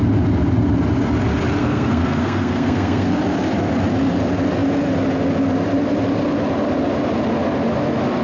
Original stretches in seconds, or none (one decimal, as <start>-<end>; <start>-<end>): 0.0-1.6; 3.2-8.2